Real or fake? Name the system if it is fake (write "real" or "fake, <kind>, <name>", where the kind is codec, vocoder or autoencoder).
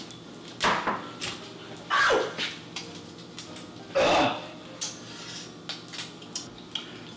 real